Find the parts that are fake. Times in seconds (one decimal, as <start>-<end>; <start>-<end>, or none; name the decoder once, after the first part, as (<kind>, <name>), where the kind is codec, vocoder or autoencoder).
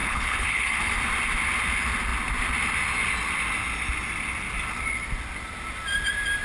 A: 0.0-0.9 (codec, HILCodec)